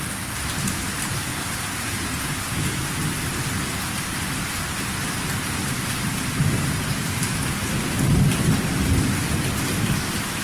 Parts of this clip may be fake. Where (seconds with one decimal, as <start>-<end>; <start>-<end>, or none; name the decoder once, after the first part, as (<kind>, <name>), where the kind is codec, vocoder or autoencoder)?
1.3-2.8 (vocoder, Vocos)